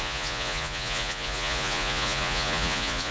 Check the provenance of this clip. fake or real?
fake